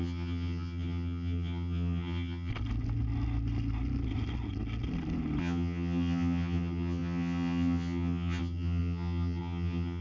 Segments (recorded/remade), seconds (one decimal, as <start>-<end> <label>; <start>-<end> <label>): 0.0-2.5 remade; 2.5-5.4 recorded; 5.4-10.0 remade